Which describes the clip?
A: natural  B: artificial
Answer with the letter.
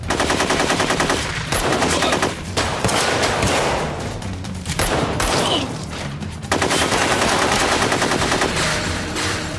B